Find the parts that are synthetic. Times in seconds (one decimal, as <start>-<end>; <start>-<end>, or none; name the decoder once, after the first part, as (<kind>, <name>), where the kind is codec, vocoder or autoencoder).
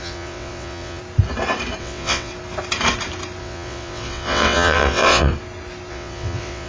0.0-1.0 (vocoder, WaveNeXt); 1.8-2.3; 3.4-5.3; 5.9-6.7